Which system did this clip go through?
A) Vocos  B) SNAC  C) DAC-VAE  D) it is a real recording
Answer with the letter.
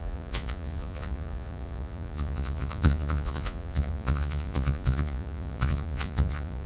A